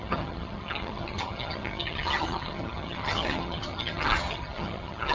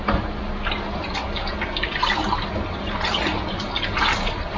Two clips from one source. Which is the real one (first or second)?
second